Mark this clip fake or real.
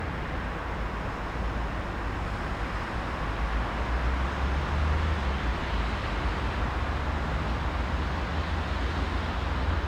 real